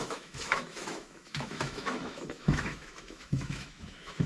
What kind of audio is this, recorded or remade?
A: remade